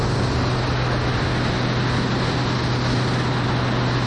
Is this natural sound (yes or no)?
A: yes